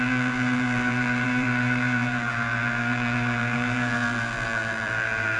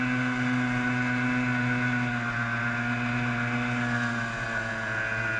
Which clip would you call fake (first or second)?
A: first